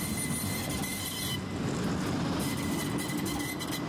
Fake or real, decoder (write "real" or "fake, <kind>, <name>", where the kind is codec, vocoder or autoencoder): real